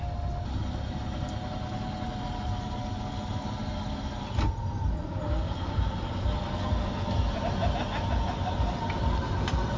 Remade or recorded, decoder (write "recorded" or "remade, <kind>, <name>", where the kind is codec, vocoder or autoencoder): recorded